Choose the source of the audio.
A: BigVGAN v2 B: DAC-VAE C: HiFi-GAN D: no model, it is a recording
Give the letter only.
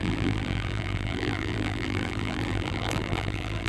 A